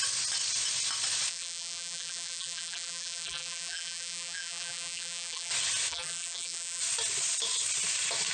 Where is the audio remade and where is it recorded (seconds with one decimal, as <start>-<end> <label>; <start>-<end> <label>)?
0.0-1.3 recorded; 1.3-5.5 remade; 5.5-5.9 recorded; 5.9-6.8 remade; 6.8-8.3 recorded